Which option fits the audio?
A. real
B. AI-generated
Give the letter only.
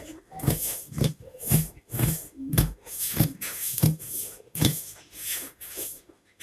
B